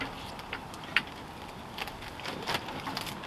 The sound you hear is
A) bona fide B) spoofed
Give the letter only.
A